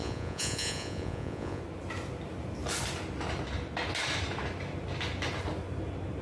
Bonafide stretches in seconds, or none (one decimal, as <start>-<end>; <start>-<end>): 1.6-6.2